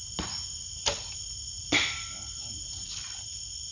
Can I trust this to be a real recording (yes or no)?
yes